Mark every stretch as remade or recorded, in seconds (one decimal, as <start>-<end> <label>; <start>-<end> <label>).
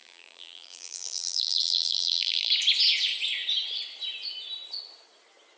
0.0-2.5 remade; 2.5-5.6 recorded